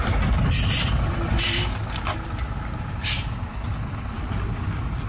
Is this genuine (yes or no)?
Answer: yes